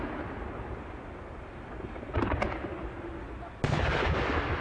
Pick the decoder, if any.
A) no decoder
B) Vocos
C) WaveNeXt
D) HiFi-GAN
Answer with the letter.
A